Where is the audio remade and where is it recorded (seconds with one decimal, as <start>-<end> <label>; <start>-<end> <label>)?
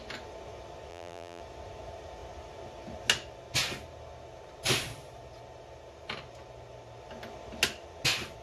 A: 0.0-0.9 recorded; 0.9-1.4 remade; 1.4-8.4 recorded